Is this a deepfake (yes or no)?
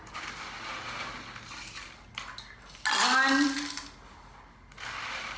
no